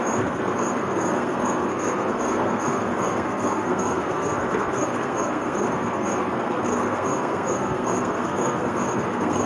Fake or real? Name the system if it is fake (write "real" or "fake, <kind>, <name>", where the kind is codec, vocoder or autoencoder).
fake, codec, SNAC